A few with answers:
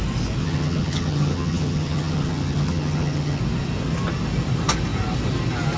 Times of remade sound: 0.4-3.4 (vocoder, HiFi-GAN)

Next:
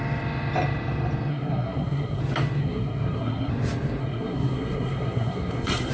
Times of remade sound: 1.3-2.2 (codec, SNAC); 2.6-3.5; 4.0-5.9

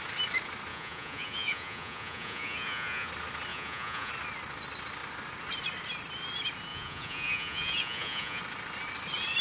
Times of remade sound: 0.7-3.1 (vocoder, Vocos); 3.5-4.1; 6.7-8.4